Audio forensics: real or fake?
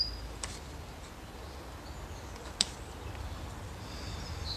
real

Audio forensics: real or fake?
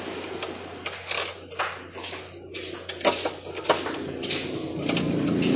real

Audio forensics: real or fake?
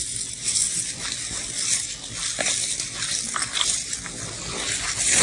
real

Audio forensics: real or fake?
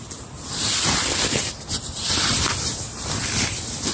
fake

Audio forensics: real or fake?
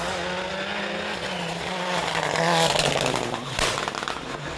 real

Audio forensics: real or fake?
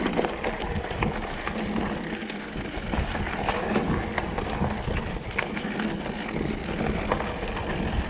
real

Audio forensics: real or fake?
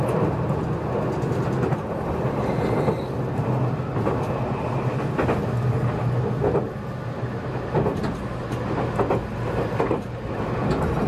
real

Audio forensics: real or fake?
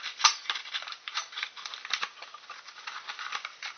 fake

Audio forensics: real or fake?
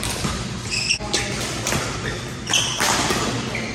fake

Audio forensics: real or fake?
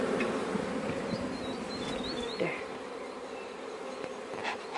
fake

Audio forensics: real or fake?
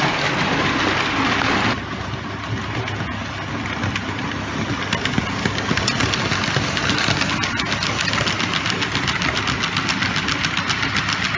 real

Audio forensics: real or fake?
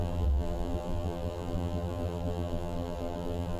fake